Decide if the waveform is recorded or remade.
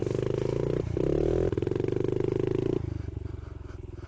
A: recorded